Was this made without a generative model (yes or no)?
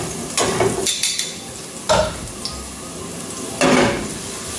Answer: yes